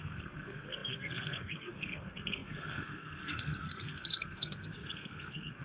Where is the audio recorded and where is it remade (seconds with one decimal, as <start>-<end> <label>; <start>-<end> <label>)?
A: 0.0-5.6 remade